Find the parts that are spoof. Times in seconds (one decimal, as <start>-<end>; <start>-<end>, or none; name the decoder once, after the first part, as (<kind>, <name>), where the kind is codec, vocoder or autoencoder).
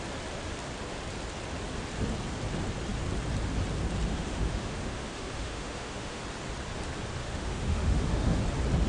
4.1-6.2 (autoencoder, DAC-VAE); 7.2-8.4